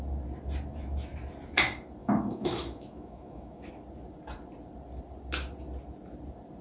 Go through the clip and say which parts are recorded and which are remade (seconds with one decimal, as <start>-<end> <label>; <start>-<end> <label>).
0.0-2.0 recorded; 2.0-3.7 remade; 3.7-6.6 recorded